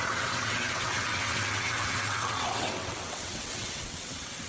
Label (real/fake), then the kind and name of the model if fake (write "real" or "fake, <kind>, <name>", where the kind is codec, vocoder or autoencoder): fake, vocoder, WaveNeXt